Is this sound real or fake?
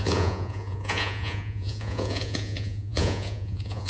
fake